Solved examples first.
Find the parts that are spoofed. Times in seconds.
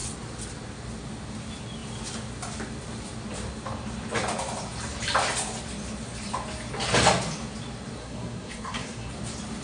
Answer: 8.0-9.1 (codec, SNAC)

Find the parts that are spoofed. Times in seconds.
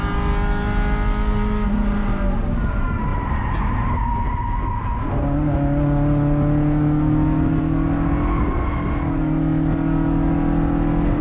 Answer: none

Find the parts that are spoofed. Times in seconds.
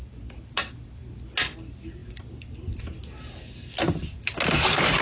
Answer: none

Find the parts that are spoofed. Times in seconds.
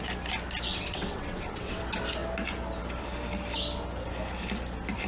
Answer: 0.7-1.8 (vocoder, WaveNeXt)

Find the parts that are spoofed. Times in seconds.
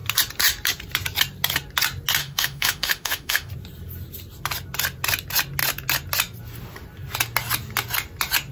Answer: 2.2-3.5 (autoencoder, DAC-VAE)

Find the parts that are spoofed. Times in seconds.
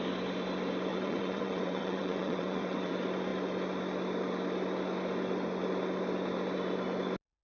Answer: 0.9-2.9 (vocoder, WaveNeXt)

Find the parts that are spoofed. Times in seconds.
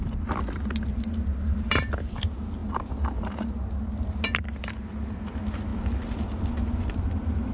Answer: 1.3-2.1 (vocoder, BigVGAN v2); 5.7-6.5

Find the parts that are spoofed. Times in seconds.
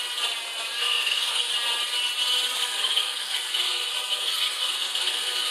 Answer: 0.8-1.5 (codec, SNAC); 2.6-5.5